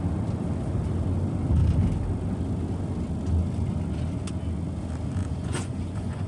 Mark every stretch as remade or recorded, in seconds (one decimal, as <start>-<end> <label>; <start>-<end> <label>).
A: 0.0-5.2 recorded; 5.2-6.3 remade